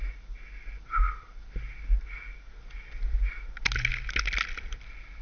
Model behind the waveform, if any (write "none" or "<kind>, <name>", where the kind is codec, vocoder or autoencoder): none